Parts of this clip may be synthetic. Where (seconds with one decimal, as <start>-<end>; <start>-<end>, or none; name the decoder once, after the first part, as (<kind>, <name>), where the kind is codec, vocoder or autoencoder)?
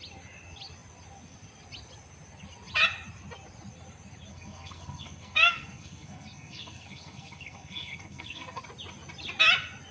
4.3-8.6 (codec, SNAC)